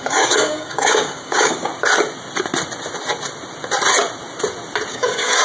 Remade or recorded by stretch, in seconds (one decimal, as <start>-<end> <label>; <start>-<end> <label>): 0.0-1.7 remade; 1.7-4.9 recorded; 4.9-5.4 remade